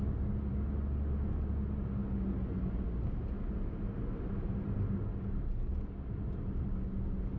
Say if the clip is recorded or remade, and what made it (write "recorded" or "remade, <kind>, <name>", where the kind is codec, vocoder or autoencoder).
recorded